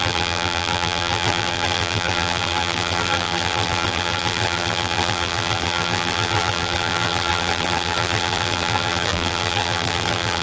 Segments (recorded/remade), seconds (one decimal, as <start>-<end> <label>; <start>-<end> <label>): 0.0-10.4 remade